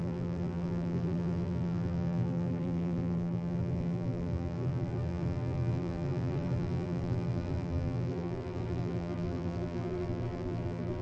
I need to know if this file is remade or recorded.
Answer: remade